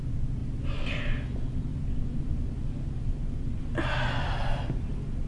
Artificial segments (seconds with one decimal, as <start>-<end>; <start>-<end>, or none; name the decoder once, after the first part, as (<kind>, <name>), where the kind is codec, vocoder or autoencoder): none